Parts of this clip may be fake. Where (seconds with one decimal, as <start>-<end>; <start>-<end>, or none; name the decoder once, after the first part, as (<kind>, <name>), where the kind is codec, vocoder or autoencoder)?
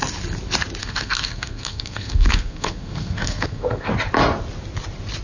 0.8-3.9 (codec, SNAC)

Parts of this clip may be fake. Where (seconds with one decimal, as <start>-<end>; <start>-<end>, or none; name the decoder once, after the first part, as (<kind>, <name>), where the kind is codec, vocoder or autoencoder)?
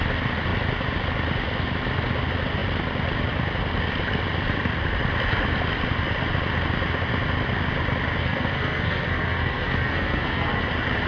8.2-10.6 (codec, SNAC)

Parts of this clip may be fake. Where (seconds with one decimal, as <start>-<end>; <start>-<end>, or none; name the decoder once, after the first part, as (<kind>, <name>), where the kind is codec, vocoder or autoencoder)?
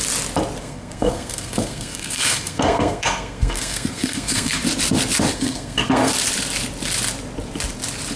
0.6-4.6 (codec, SNAC); 5.3-6.1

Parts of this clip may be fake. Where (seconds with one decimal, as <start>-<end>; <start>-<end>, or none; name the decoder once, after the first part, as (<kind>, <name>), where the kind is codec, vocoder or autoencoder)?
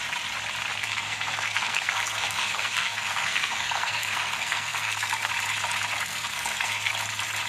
0.8-5.3 (codec, SNAC); 6.1-6.9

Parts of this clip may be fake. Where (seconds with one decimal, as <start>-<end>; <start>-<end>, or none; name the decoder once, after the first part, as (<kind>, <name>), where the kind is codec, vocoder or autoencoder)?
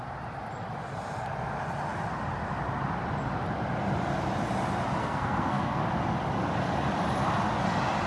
5.0-5.8 (codec, SNAC)